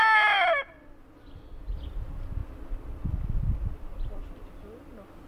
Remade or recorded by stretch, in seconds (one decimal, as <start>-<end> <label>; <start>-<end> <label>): 0.0-5.3 recorded